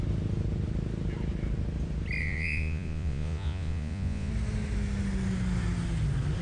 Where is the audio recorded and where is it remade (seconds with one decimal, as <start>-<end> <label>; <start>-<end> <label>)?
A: 0.0-2.2 recorded; 2.2-4.3 remade; 4.3-6.4 recorded